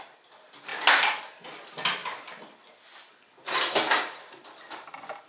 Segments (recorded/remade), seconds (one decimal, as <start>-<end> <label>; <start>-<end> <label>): 0.0-5.3 recorded